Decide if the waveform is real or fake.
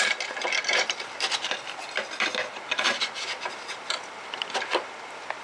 fake